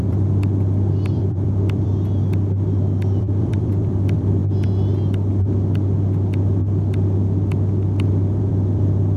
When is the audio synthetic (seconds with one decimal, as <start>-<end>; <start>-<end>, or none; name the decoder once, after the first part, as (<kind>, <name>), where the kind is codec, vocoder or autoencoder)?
0.0-1.9 (vocoder, BigVGAN v2); 3.2-4.4; 8.4-9.2